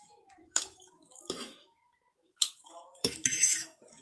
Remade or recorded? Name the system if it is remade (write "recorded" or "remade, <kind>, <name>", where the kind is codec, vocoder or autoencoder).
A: remade, autoencoder, DAC-VAE